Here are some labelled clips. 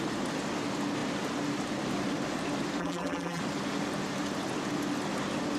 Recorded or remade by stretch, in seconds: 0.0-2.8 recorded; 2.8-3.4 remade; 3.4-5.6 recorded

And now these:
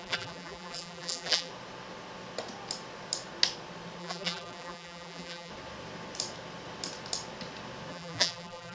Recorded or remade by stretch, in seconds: 0.0-1.5 remade; 1.5-4.0 recorded; 4.0-5.5 remade; 5.5-7.9 recorded; 7.9-8.7 remade

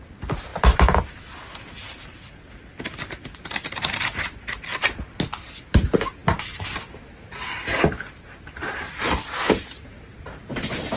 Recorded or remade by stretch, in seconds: 0.0-11.0 recorded

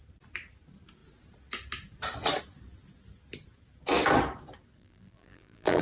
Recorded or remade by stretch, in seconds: 0.0-4.8 recorded; 4.8-5.8 remade

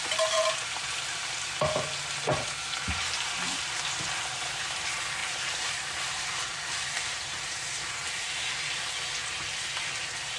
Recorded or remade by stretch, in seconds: 0.0-5.2 recorded; 5.2-8.7 remade; 8.7-10.4 recorded